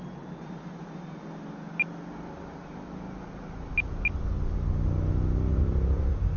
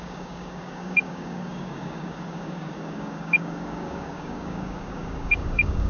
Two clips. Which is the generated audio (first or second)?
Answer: second